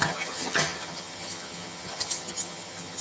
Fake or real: fake